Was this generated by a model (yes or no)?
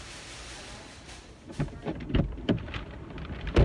yes